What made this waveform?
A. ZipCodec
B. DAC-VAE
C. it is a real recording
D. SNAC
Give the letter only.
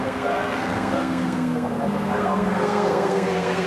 D